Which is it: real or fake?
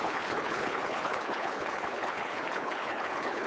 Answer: fake